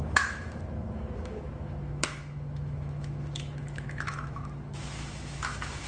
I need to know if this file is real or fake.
fake